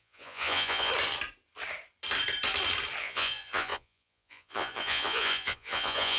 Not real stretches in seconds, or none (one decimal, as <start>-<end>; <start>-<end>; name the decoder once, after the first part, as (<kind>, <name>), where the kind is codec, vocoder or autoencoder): 0.0-0.9 (vocoder, Vocos); 3.0-6.2